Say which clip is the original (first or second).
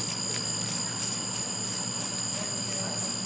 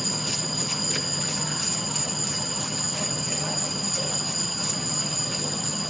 first